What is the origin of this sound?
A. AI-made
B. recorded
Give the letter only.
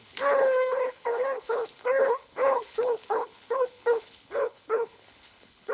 A